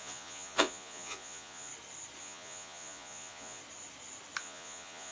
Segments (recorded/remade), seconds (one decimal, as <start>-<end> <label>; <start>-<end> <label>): 0.0-1.7 remade; 1.7-2.2 recorded; 2.2-3.6 remade; 3.6-4.4 recorded; 4.4-5.1 remade